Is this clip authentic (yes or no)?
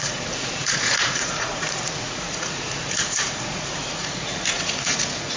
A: no